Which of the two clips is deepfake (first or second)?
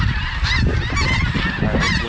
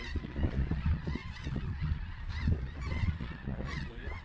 second